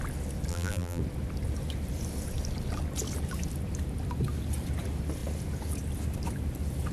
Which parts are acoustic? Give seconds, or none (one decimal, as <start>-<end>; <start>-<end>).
0.0-0.5; 1.0-6.9